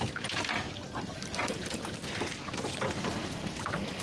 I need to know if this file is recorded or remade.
recorded